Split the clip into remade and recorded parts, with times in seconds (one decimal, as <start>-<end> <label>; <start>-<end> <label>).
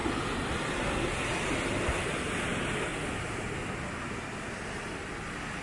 0.0-5.6 recorded